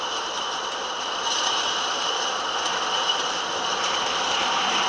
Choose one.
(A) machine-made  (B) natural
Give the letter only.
B